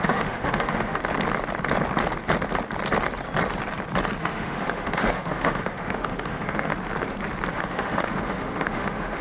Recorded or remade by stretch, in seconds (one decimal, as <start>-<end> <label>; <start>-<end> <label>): 0.0-1.0 remade; 1.0-4.2 recorded; 4.2-6.7 remade; 6.7-7.5 recorded; 7.5-9.2 remade

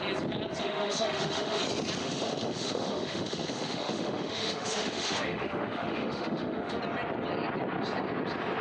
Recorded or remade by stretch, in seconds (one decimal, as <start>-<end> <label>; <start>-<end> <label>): 0.0-0.6 recorded; 0.6-1.6 remade; 1.6-2.0 recorded; 2.0-6.8 remade; 6.8-8.6 recorded

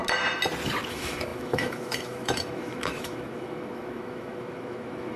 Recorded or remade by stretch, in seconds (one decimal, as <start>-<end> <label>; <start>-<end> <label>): 0.0-0.9 recorded; 0.9-5.2 remade

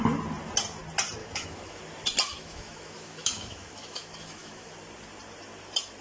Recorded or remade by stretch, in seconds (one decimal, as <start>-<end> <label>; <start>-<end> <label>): 0.0-1.2 recorded; 1.2-1.8 remade; 1.8-2.3 recorded; 2.3-4.7 remade; 4.7-6.0 recorded

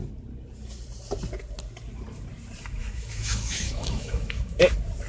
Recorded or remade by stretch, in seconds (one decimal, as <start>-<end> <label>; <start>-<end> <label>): 0.0-2.8 recorded; 2.8-4.6 remade; 4.6-5.1 recorded

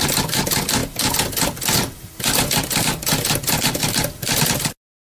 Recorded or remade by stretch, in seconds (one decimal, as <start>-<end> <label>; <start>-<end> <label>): 0.0-5.0 recorded